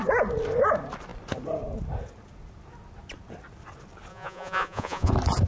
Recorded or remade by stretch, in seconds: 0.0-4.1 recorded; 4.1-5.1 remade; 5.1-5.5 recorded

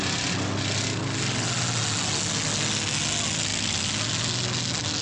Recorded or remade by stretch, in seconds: 0.0-5.0 recorded